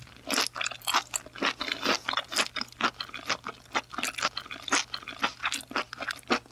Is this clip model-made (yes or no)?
no